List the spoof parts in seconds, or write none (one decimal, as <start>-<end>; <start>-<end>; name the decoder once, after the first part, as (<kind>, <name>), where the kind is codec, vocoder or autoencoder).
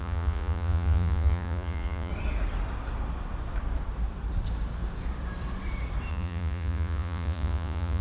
0.0-2.1 (vocoder, Vocos); 6.1-8.0